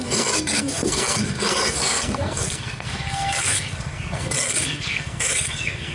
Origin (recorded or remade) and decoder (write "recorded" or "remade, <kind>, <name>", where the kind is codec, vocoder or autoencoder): remade, codec, SNAC